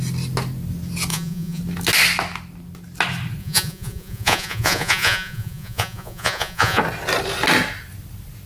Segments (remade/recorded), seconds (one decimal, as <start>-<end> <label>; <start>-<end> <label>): 0.0-1.1 recorded; 1.1-1.6 remade; 1.6-3.4 recorded; 3.4-6.8 remade; 6.8-8.5 recorded